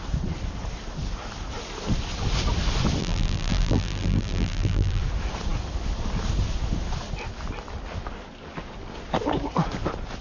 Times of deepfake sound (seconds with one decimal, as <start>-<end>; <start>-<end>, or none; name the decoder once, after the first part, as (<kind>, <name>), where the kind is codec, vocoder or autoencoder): 3.0-5.0 (vocoder, BigVGAN v2)